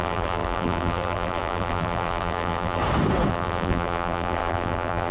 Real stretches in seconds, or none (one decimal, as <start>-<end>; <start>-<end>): 2.8-3.3